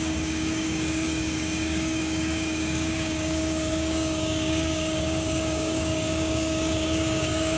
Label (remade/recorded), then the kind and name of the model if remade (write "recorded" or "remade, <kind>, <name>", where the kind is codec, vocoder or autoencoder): remade, codec, DAC